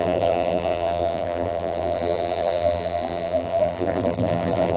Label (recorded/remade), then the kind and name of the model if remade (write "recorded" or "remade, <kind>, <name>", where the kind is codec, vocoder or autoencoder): remade, vocoder, BigVGAN v2